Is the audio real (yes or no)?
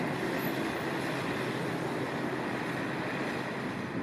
yes